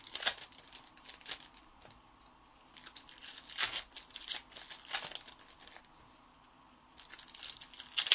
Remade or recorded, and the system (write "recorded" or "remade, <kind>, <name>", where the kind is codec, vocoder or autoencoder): recorded